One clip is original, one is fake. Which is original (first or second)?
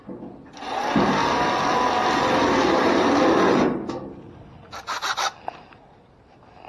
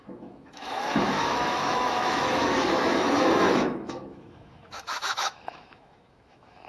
first